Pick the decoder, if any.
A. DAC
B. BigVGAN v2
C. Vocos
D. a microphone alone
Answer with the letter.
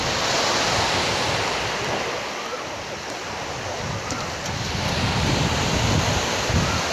D